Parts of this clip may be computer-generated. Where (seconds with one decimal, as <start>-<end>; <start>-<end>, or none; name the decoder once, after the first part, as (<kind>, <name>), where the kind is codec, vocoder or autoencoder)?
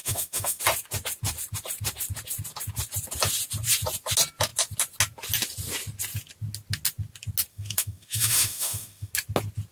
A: 0.0-0.6 (autoencoder, DAC-VAE); 7.5-9.1